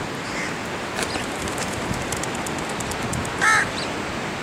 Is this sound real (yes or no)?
yes